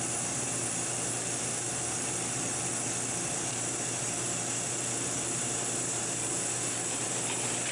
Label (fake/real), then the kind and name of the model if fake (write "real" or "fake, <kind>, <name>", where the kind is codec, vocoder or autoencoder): real